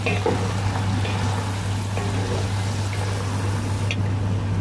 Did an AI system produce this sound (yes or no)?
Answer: no